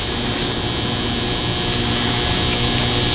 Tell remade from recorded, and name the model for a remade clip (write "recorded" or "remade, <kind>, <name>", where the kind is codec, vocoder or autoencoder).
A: recorded